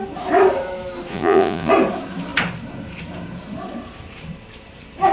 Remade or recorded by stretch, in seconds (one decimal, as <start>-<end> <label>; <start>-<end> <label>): 0.0-1.1 recorded; 1.1-1.7 remade; 1.7-5.1 recorded